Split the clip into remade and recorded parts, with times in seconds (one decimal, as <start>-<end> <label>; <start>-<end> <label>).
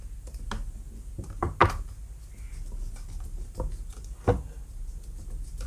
0.0-5.7 recorded